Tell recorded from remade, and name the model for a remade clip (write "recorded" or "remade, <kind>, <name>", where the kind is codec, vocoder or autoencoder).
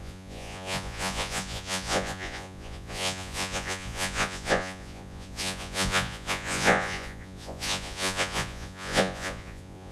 remade, vocoder, Vocos